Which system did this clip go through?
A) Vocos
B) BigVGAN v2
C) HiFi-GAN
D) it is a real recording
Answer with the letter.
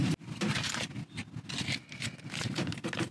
D